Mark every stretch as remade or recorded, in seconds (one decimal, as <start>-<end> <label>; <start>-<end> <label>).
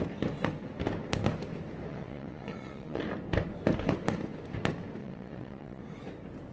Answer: 0.0-1.9 recorded; 1.9-3.0 remade; 3.0-5.0 recorded; 5.0-5.8 remade; 5.8-6.5 recorded